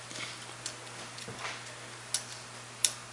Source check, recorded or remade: recorded